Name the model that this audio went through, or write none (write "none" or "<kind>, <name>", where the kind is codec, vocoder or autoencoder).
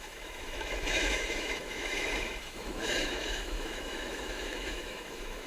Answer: autoencoder, DAC-VAE